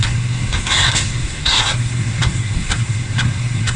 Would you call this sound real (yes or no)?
no